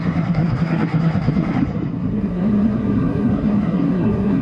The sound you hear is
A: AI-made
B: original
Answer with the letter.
A